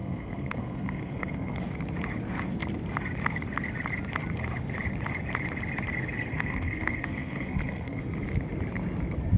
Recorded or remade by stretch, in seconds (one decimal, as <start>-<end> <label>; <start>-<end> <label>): 0.0-1.6 remade; 1.6-6.3 recorded; 6.3-8.0 remade; 8.0-9.4 recorded